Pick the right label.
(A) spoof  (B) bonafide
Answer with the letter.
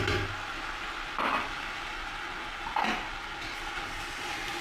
B